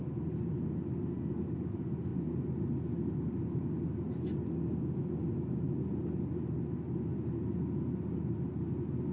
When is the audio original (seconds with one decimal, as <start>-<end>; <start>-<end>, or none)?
0.0-9.1